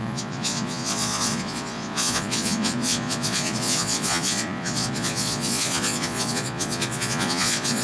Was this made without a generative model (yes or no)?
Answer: no